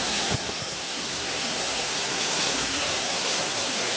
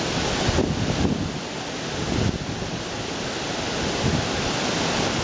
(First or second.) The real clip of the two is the second